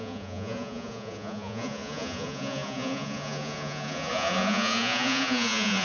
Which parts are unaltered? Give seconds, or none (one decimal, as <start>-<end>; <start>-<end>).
none